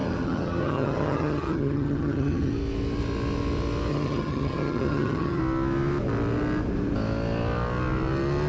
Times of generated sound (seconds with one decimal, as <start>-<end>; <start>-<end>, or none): 0.0-2.5; 3.9-5.4